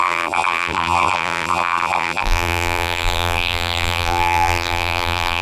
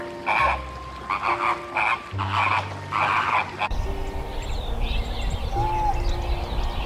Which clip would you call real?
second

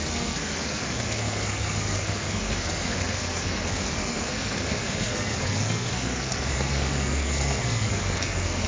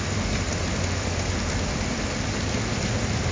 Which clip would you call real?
second